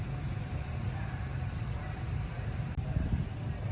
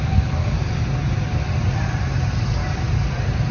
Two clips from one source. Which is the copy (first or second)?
first